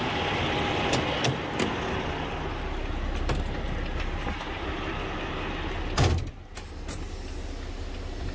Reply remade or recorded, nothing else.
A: recorded